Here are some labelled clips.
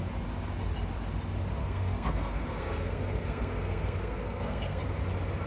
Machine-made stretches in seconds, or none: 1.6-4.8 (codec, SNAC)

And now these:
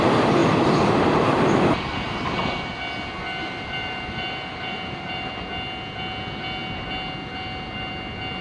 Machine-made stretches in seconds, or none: 0.4-2.7 (vocoder, BigVGAN v2); 3.4-5.3

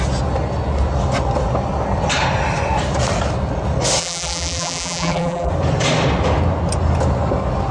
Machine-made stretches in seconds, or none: 4.0-5.5 (vocoder, BigVGAN v2)

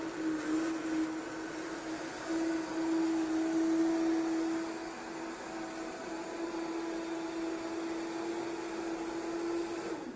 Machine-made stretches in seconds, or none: 6.0-6.7 (vocoder, BigVGAN v2)

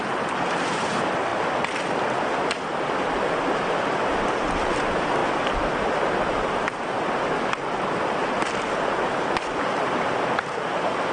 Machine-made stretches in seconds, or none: none